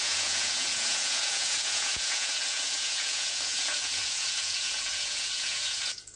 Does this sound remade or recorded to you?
remade